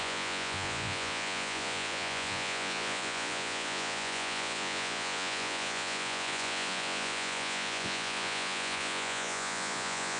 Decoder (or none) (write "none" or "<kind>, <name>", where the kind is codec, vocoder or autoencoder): vocoder, Vocos